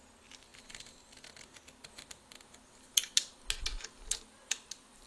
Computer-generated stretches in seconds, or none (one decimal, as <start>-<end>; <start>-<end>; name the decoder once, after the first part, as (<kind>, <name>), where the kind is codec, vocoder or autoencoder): none